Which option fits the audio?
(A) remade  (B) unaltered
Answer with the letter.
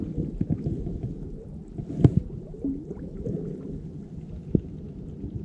B